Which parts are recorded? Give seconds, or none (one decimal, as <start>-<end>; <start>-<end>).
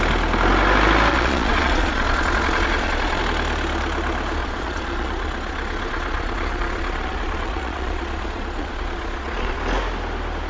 0.0-1.1; 3.2-4.4; 9.6-10.5